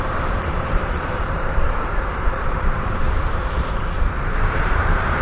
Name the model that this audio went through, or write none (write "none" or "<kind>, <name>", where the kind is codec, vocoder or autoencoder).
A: vocoder, BigVGAN v2